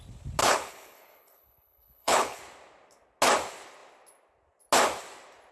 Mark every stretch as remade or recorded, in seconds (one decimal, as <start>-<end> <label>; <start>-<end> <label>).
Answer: 0.0-0.4 recorded; 0.4-2.4 remade; 2.4-5.5 recorded